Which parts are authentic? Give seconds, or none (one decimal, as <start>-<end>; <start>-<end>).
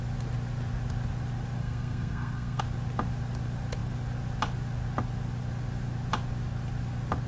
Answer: 0.0-1.6; 2.6-7.3